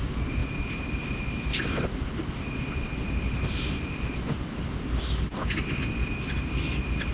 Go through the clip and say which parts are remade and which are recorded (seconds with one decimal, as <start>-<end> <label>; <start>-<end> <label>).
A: 0.0-7.1 recorded